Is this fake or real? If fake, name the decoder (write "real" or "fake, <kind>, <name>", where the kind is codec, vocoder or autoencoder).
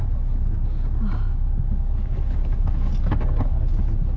real